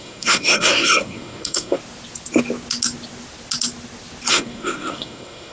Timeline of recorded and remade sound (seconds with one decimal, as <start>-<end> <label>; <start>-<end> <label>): 0.0-1.8 remade; 1.8-4.3 recorded; 4.3-5.5 remade